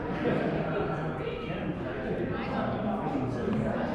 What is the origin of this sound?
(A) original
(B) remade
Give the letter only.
B